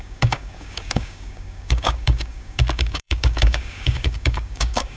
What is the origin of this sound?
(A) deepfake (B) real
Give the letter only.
A